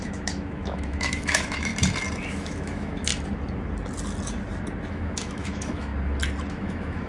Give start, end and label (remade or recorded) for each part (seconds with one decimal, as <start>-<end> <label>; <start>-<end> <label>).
0.0-1.7 remade; 1.7-2.3 recorded; 2.3-3.1 remade; 3.1-4.9 recorded; 4.9-5.9 remade; 5.9-6.5 recorded; 6.5-7.1 remade